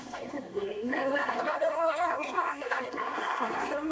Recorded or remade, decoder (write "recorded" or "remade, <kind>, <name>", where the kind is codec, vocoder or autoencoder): remade, codec, SNAC